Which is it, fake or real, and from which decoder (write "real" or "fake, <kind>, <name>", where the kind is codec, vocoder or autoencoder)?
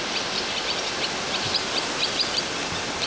real